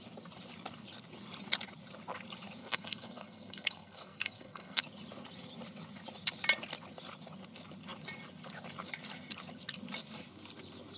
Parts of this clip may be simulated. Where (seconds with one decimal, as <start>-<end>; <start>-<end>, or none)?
2.6-4.8